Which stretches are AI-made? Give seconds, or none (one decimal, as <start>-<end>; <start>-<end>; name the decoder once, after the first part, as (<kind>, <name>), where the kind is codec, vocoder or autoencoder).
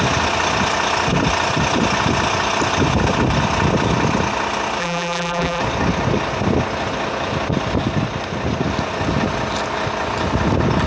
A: 4.8-5.6 (vocoder, BigVGAN v2)